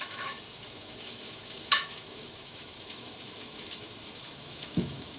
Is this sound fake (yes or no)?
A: yes